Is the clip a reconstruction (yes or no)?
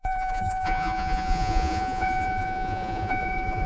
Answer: yes